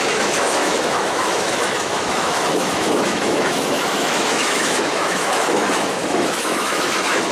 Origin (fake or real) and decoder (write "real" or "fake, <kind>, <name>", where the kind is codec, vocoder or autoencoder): fake, autoencoder, DAC-VAE